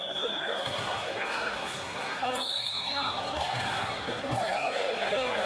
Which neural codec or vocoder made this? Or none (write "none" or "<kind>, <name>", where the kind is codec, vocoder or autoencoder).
codec, SNAC